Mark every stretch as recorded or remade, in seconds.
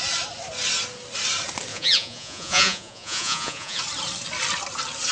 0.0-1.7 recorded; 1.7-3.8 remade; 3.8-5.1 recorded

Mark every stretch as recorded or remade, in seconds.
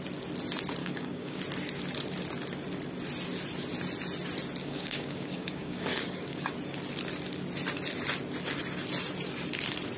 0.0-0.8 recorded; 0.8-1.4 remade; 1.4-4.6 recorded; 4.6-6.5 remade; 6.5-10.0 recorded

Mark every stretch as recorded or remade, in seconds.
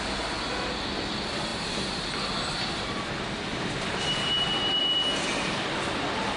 0.0-1.5 recorded; 1.5-2.1 remade; 2.1-3.5 recorded; 3.5-4.8 remade; 4.8-6.4 recorded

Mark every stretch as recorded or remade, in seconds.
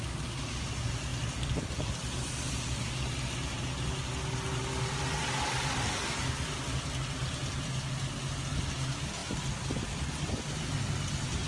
0.0-11.5 recorded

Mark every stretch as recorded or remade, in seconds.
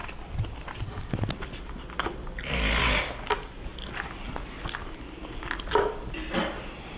0.0-7.0 recorded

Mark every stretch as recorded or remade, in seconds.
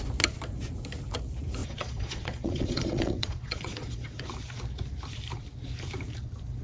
0.0-1.6 recorded; 1.6-4.2 remade; 4.2-6.6 recorded